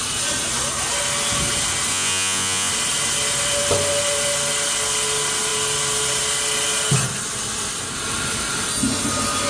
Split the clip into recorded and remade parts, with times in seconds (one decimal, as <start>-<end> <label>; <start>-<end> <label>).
0.0-1.9 recorded; 1.9-2.7 remade; 2.7-9.5 recorded